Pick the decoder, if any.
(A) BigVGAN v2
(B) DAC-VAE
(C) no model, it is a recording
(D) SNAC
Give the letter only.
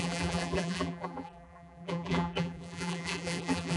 A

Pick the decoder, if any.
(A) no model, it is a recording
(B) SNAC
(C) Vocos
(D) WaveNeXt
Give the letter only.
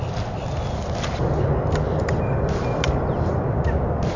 A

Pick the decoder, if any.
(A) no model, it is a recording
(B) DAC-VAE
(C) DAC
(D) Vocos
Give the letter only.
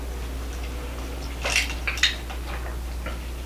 A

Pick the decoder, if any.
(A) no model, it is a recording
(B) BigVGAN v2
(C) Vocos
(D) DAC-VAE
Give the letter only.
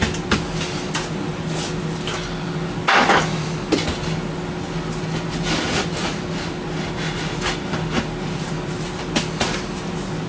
A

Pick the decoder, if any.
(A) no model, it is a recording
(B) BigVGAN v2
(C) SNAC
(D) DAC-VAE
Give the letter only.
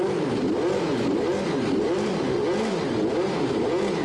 A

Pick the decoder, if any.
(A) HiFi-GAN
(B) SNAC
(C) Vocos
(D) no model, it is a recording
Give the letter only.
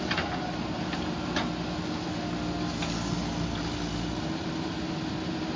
D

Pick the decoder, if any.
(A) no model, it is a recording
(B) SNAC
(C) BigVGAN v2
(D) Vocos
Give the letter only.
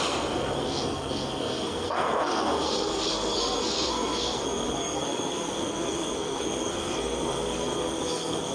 B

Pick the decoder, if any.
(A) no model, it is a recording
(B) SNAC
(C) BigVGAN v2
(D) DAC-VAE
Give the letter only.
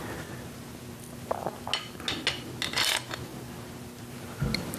A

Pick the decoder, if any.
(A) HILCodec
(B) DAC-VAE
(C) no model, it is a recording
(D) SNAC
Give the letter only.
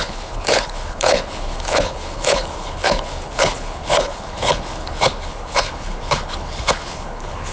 A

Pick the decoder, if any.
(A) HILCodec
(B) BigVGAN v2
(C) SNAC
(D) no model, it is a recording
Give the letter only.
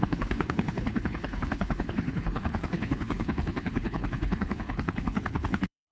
A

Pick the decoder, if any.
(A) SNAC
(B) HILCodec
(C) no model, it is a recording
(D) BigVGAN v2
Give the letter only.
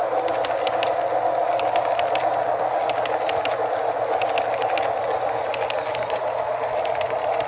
C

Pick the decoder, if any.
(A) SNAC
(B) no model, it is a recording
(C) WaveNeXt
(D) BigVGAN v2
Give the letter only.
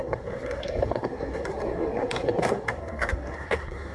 A